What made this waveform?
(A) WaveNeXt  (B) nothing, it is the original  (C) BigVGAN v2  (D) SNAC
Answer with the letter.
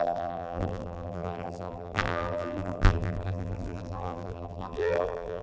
C